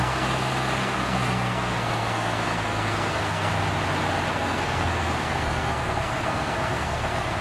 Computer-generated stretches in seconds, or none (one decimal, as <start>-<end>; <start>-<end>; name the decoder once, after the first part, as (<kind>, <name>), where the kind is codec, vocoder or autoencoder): 0.0-3.5 (codec, SNAC); 4.3-7.4